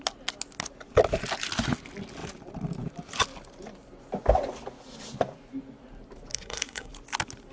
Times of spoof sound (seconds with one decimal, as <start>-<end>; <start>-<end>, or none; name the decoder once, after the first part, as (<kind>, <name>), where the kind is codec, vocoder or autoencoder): 6.3-6.9 (codec, SNAC)